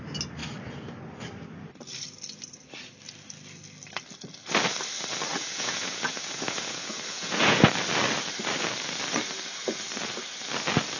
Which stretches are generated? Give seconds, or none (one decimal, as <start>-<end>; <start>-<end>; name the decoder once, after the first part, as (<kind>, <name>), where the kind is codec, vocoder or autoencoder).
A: 5.3-7.6 (vocoder, Vocos)